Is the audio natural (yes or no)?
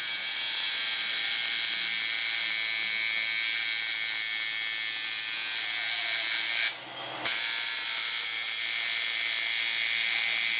yes